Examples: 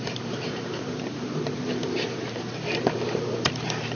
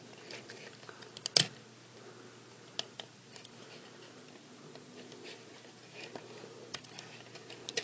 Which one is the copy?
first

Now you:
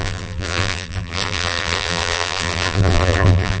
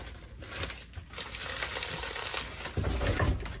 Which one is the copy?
first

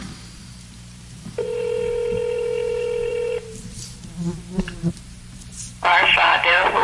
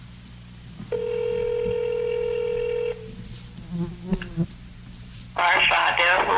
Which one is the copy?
first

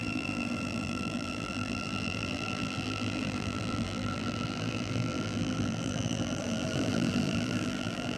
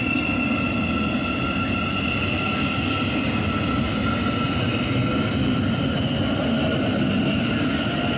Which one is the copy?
first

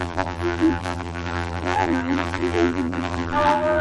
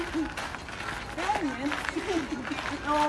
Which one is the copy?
first